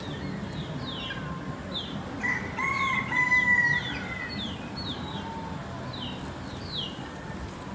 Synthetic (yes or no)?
no